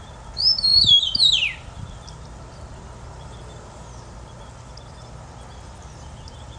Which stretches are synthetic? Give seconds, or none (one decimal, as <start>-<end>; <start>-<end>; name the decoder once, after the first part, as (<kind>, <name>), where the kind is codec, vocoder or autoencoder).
none